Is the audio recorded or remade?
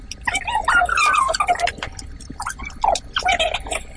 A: recorded